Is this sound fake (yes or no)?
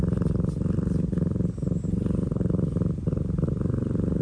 no